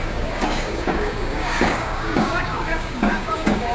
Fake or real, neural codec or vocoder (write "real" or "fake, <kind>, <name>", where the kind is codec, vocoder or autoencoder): fake, codec, DAC